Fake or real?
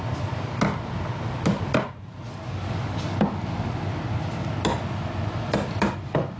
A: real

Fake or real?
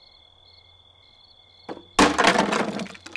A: real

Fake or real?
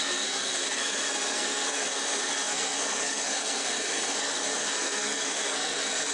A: fake